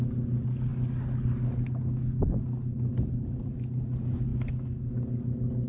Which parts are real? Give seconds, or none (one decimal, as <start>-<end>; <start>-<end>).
0.0-2.9; 3.5-5.7